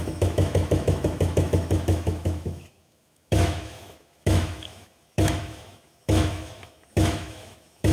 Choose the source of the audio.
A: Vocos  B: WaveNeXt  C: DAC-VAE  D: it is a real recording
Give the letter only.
C